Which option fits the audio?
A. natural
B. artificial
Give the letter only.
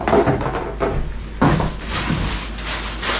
A